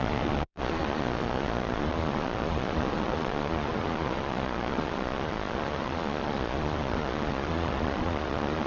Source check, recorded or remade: remade